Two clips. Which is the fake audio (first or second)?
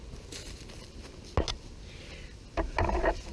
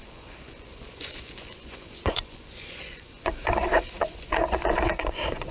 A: second